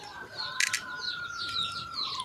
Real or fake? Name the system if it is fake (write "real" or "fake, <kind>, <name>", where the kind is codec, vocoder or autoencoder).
real